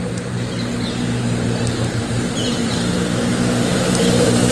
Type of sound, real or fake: fake